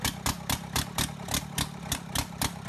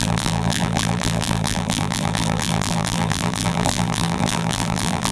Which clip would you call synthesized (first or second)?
second